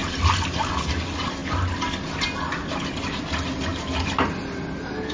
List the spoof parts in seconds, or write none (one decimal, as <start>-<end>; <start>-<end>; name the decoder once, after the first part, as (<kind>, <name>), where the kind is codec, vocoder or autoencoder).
none